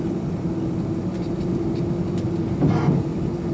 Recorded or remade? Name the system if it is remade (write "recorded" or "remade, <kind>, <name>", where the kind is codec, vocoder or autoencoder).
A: recorded